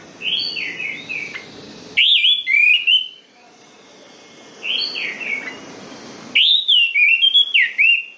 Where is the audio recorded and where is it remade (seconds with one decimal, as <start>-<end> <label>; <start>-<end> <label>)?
0.0-8.2 recorded

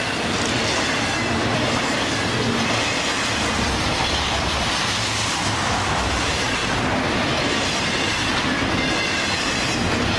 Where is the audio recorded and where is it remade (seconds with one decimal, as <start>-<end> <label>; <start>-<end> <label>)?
0.0-10.2 recorded

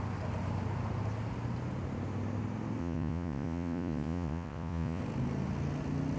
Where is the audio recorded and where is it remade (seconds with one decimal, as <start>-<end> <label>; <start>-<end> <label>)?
0.0-2.8 recorded; 2.8-5.0 remade; 5.0-6.2 recorded

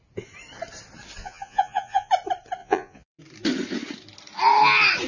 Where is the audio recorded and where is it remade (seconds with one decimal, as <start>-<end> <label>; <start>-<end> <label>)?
0.0-1.2 recorded; 1.2-2.1 remade; 2.1-2.6 recorded; 2.6-3.2 remade; 3.2-5.1 recorded